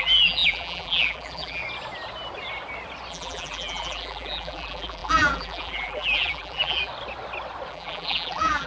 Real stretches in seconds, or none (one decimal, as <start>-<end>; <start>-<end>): 1.6-3.1; 6.9-7.7